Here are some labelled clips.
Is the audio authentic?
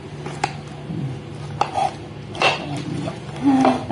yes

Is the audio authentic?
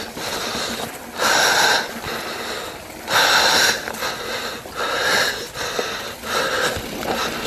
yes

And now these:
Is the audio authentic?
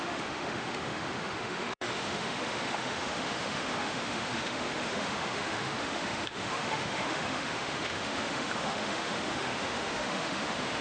no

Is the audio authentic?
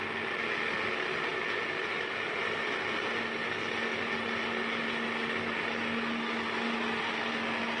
yes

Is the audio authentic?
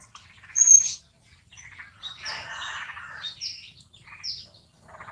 yes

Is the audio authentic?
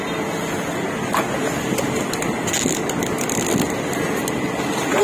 yes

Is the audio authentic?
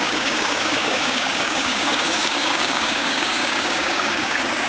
no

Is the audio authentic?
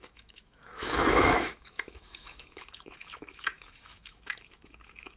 no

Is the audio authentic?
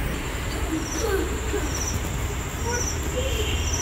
yes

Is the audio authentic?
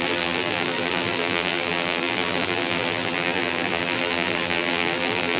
no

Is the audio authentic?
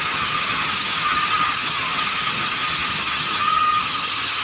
no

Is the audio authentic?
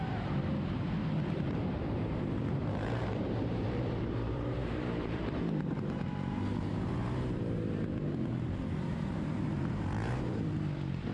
no